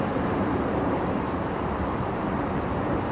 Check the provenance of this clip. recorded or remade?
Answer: remade